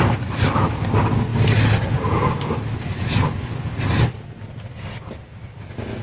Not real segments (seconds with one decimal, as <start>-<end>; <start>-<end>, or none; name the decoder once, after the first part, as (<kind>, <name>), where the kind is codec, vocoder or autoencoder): none